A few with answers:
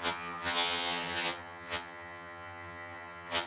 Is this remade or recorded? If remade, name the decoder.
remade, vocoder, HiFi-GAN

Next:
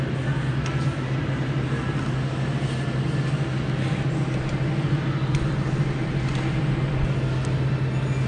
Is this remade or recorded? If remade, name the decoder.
recorded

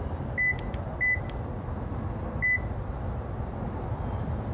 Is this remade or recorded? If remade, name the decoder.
recorded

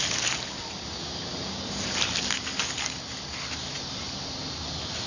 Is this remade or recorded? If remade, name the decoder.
recorded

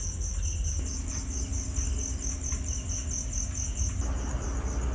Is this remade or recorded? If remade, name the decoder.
recorded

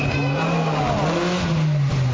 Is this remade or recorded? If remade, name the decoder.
recorded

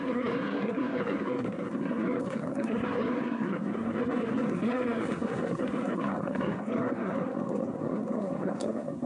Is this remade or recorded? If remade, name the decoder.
remade, codec, SNAC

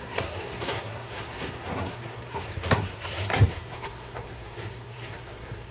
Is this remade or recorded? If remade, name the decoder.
remade, codec, SNAC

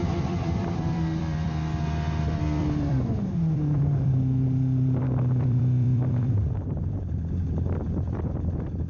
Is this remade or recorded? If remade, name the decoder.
remade, vocoder, BigVGAN v2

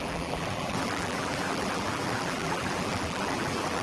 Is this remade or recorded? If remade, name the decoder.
remade, vocoder, BigVGAN v2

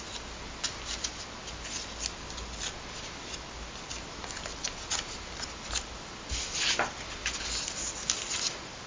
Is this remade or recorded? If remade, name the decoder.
recorded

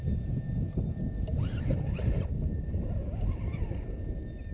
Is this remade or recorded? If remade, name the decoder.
recorded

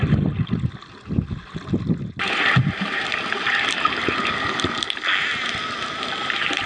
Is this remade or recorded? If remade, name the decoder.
recorded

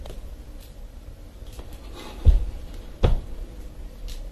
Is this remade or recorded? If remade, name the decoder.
recorded